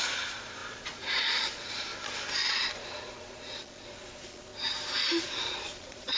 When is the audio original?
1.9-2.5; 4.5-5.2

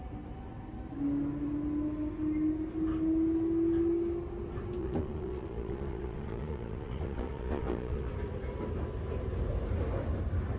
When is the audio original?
0.0-4.8; 8.1-10.6

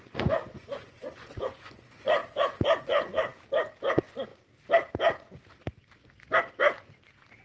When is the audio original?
2.2-2.8; 3.3-3.9; 4.3-7.4

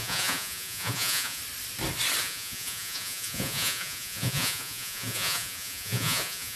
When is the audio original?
1.4-2.2

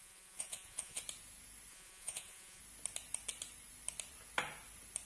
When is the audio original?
1.0-1.7; 2.6-5.1

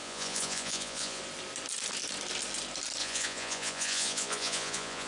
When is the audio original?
1.2-3.0

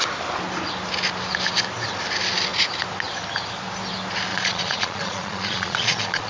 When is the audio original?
0.0-4.3